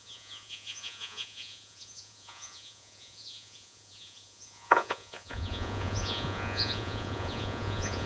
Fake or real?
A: fake